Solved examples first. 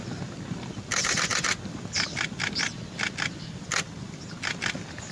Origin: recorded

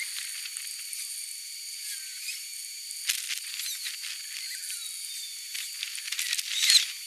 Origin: recorded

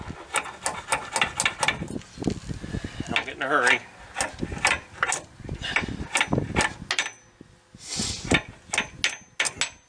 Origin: recorded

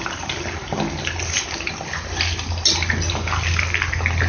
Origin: recorded